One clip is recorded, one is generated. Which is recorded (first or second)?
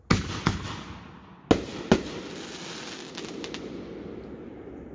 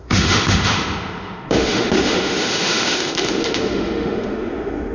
first